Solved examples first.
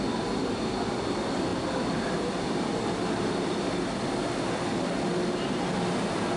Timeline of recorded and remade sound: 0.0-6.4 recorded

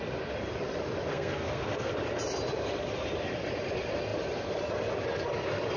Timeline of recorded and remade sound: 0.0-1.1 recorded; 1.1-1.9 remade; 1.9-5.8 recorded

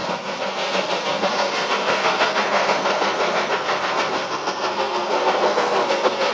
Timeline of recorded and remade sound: 0.0-6.3 remade

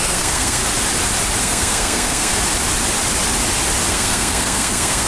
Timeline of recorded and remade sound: 0.0-0.6 remade; 0.6-1.4 recorded; 1.4-2.3 remade; 2.3-3.9 recorded; 3.9-5.1 remade

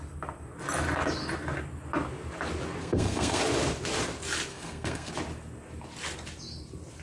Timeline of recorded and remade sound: 0.0-2.8 recorded; 2.8-3.4 remade; 3.4-4.5 recorded; 4.5-5.1 remade; 5.1-7.0 recorded

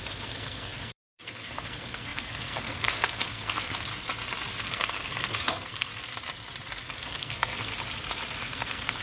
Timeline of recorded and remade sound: 0.0-3.9 remade; 3.9-4.6 recorded; 4.6-5.9 remade; 5.9-6.8 recorded; 6.8-7.7 remade; 7.7-8.4 recorded; 8.4-9.0 remade